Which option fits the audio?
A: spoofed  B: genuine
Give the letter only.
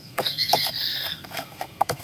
A